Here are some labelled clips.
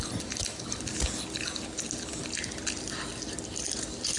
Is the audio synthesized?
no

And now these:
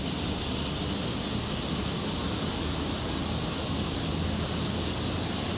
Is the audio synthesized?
no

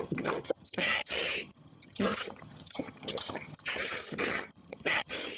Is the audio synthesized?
yes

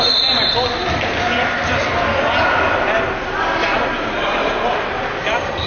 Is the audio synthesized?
no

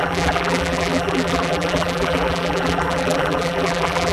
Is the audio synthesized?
yes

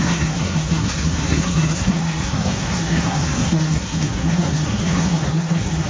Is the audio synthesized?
yes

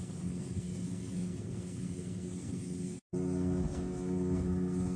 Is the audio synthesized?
yes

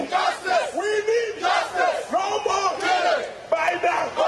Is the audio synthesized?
no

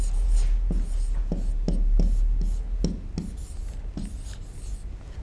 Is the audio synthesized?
no